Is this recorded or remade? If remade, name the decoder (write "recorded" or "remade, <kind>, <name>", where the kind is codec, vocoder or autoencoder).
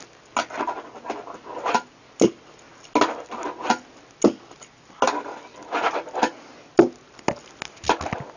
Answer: recorded